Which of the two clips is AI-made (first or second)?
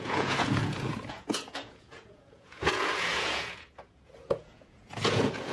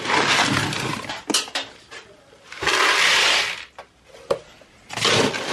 first